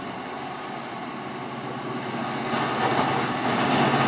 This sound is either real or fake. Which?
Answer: real